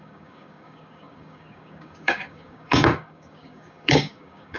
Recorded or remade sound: remade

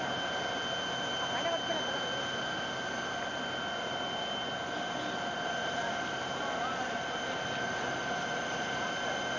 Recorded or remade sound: recorded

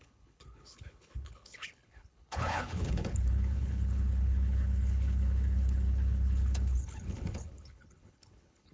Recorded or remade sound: remade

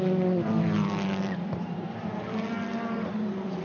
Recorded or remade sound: remade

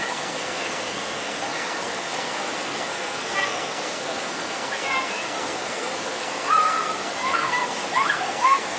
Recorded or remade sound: remade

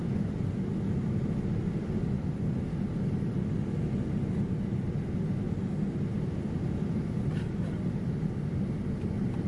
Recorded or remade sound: recorded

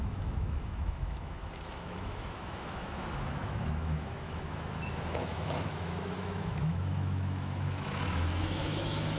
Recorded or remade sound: remade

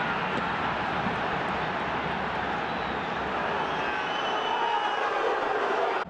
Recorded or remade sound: recorded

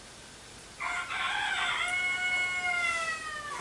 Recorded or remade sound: recorded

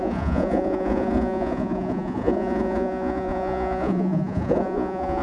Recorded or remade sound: remade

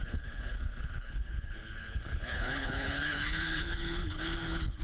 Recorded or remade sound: remade